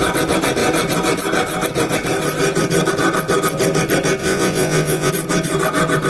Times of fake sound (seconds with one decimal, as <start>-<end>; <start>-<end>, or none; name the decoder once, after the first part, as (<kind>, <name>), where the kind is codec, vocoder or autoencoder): 4.2-5.1 (vocoder, Vocos)